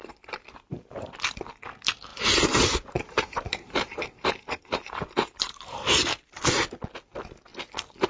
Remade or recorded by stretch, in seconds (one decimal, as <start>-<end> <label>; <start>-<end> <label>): 0.0-1.1 remade; 1.1-2.1 recorded; 2.1-6.7 remade; 6.7-8.1 recorded